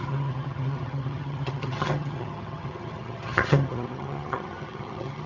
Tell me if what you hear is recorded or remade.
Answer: remade